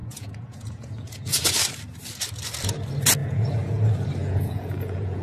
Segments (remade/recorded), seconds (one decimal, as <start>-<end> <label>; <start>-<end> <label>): 0.0-1.4 remade; 1.4-3.2 recorded; 3.2-3.8 remade; 3.8-4.2 recorded; 4.2-5.2 remade